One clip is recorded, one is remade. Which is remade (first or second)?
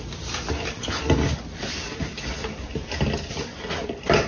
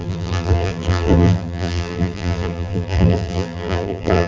second